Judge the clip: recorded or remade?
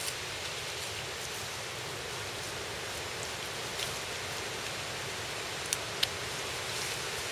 recorded